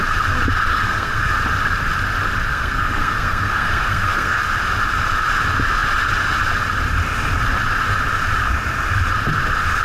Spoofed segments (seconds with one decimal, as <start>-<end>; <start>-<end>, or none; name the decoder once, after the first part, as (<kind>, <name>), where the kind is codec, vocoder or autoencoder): 0.7-1.3 (codec, SNAC); 2.5-4.4